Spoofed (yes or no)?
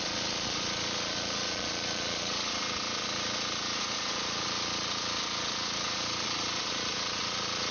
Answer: yes